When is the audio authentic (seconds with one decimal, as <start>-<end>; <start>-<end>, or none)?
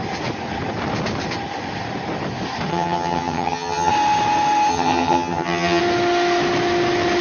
0.0-2.7; 3.9-4.7; 5.8-7.2